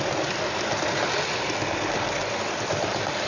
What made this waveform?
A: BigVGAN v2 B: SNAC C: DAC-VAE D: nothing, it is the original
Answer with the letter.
D